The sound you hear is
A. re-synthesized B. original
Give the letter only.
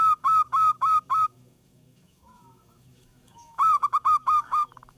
A